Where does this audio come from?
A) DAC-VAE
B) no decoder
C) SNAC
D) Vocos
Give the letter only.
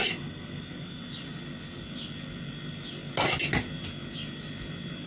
B